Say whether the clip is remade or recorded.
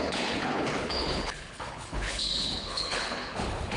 remade